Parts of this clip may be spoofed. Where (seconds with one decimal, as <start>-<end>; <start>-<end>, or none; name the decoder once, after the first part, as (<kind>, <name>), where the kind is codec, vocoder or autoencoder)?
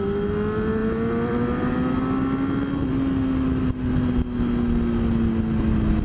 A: none